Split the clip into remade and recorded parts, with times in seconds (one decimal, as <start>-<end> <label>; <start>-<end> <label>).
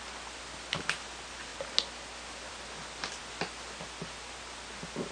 0.0-5.1 recorded